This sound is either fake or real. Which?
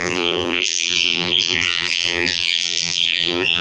fake